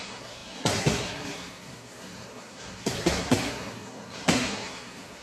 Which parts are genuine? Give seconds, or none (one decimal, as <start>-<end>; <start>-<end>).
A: none